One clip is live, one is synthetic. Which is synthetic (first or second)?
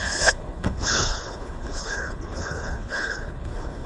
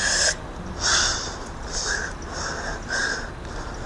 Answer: first